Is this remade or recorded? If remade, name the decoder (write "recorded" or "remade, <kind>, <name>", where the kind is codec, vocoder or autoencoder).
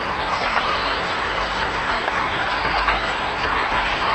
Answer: remade, codec, SNAC